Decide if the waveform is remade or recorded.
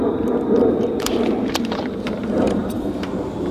remade